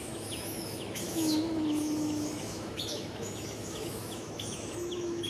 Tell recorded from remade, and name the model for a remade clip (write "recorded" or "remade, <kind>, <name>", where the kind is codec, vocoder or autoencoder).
remade, autoencoder, DAC-VAE